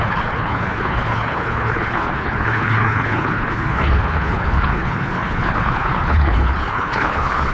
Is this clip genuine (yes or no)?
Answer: no